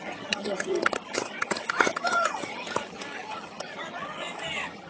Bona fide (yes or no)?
no